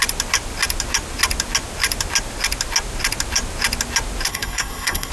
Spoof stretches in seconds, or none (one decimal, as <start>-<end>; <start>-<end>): 4.3-5.1